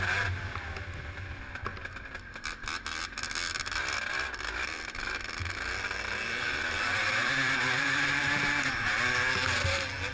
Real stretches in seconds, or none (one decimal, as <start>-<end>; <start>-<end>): 0.0-7.0; 8.9-10.1

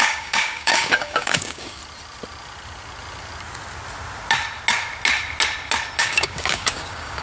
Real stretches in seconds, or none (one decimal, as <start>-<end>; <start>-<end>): 1.8-6.0

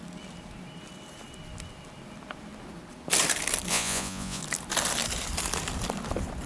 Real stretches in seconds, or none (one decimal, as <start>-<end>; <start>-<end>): 0.0-3.7; 4.4-6.5

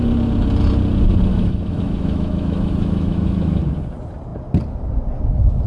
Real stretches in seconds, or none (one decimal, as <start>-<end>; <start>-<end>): 0.0-1.3; 3.6-5.7

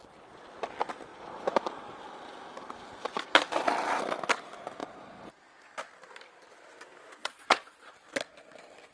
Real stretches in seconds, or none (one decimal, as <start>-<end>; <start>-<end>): 0.0-4.8; 5.3-7.2; 7.9-8.9

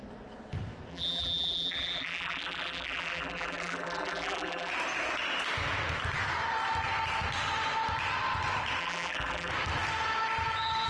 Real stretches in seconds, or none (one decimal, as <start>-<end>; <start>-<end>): 0.0-0.9; 4.7-8.8; 9.5-10.9